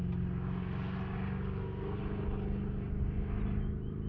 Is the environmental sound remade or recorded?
recorded